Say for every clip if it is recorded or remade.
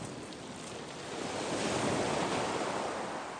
recorded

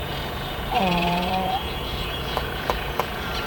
remade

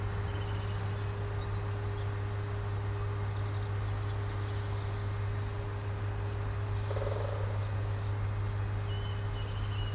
recorded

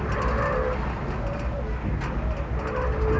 recorded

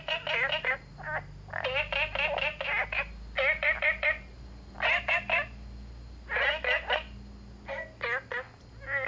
recorded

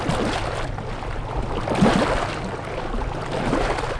recorded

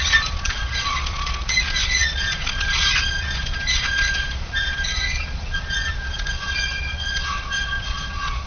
remade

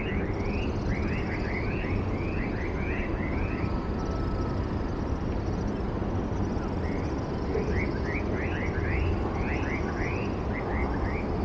recorded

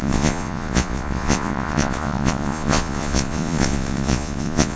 remade